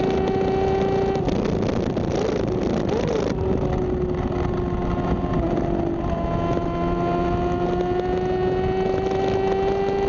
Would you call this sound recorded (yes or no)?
yes